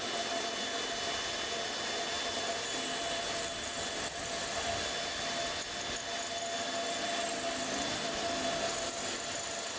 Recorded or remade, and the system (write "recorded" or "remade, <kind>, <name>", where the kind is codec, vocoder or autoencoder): recorded